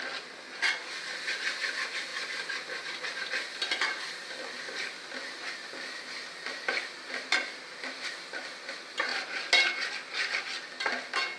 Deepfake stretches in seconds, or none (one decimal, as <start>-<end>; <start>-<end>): none